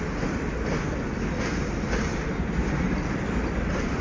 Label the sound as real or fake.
real